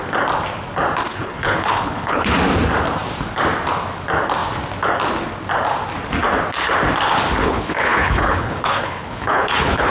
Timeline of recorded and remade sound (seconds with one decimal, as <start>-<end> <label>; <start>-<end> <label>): 0.0-1.1 recorded; 1.1-2.3 remade; 2.3-7.4 recorded; 7.4-9.9 remade